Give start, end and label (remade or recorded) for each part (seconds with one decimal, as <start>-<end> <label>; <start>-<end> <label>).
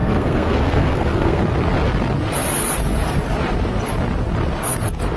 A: 0.0-1.4 remade; 1.4-5.2 recorded